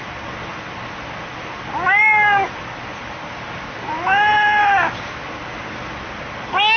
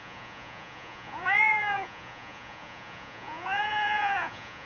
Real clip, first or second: first